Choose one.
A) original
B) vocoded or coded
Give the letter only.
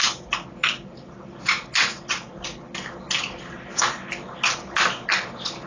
A